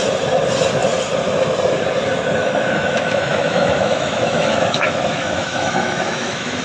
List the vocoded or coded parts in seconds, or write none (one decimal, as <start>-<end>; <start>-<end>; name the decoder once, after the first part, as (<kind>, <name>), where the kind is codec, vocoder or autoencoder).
2.4-6.6 (autoencoder, DAC-VAE)